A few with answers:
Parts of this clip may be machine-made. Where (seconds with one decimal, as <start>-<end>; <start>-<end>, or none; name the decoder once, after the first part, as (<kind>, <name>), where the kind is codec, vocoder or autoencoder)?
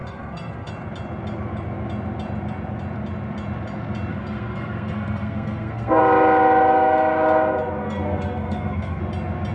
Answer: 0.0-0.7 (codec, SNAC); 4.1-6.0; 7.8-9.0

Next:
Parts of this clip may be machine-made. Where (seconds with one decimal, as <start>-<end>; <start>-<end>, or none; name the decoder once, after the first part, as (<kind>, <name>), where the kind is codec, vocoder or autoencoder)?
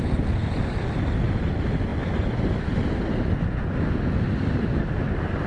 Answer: none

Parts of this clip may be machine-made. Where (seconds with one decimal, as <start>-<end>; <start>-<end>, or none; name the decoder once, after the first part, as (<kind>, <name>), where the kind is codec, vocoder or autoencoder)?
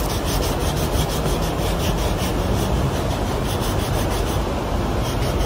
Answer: none